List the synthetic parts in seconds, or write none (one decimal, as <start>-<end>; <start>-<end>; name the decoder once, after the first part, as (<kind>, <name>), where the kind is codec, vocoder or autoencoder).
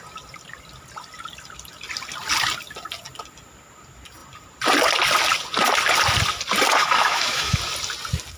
6.8-7.6 (autoencoder, DAC-VAE)